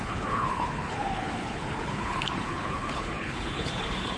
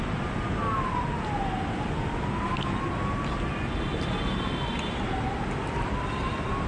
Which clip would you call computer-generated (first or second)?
first